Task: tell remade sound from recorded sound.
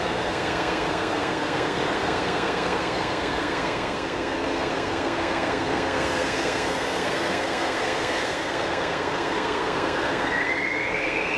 remade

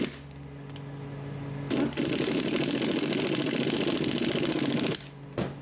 recorded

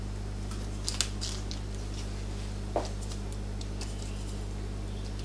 recorded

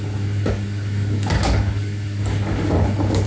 remade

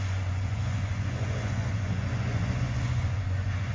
remade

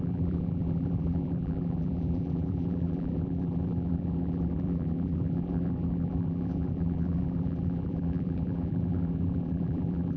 remade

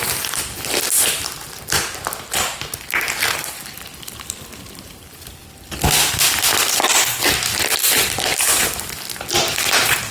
recorded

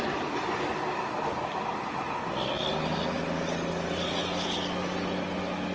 recorded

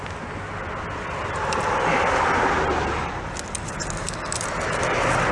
recorded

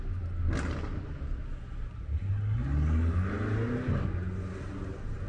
recorded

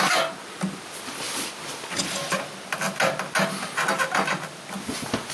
recorded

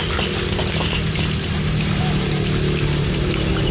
recorded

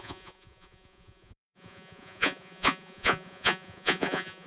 remade